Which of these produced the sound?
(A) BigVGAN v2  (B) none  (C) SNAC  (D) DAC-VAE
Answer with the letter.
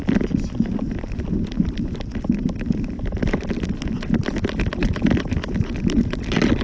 B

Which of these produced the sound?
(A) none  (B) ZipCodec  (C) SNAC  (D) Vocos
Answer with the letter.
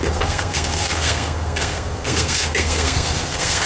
C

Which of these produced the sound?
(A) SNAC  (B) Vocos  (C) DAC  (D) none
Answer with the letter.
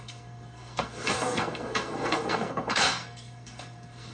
A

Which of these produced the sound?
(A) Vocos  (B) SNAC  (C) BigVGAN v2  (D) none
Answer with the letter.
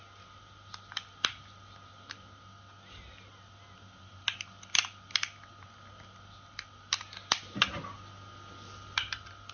D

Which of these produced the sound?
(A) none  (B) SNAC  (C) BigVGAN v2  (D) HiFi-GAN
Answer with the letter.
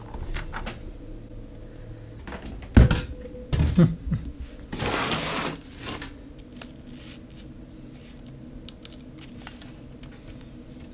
A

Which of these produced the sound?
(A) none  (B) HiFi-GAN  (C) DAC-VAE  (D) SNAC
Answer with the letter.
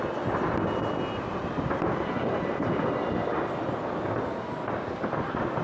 A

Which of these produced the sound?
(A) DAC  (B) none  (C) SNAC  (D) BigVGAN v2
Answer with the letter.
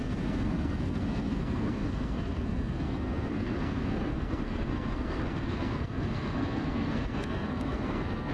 C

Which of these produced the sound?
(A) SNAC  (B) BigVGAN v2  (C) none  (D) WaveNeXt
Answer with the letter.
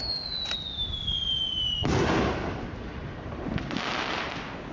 C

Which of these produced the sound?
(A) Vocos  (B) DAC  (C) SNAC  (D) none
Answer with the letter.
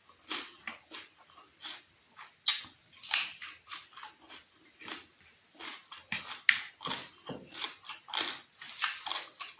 D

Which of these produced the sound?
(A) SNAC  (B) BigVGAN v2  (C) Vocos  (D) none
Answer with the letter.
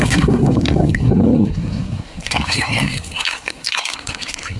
A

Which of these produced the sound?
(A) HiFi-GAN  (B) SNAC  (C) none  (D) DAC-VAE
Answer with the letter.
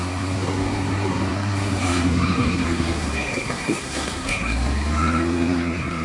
B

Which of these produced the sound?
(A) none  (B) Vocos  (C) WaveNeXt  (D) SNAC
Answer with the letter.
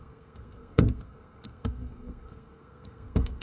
D